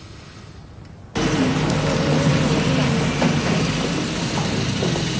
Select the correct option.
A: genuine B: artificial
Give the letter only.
A